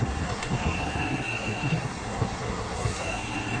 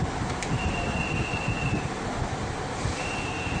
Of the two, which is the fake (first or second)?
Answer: first